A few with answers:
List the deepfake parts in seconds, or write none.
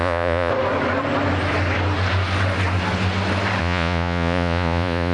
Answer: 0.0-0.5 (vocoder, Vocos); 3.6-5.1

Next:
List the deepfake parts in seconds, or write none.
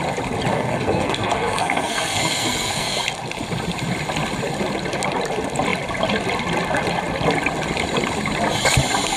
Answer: 0.5-3.0 (codec, SNAC)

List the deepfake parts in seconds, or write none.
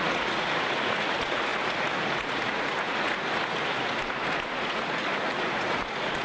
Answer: 0.0-6.2 (vocoder, Vocos)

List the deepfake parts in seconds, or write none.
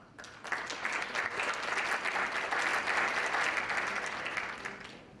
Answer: none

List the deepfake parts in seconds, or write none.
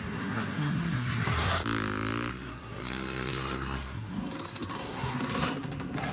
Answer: 0.0-1.6 (codec, SNAC); 2.3-6.1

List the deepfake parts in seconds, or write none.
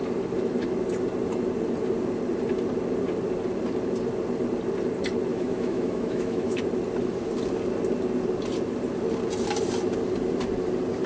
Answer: 5.3-6.6 (autoencoder, DAC-VAE)